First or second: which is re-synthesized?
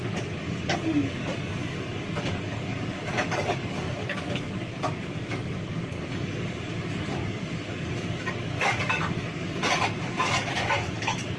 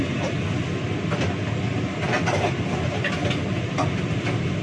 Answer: first